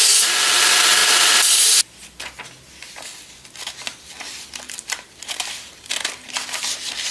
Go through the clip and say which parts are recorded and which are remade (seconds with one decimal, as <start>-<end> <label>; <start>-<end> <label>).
0.0-7.1 recorded